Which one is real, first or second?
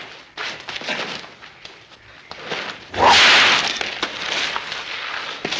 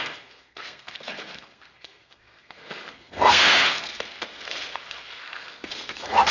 first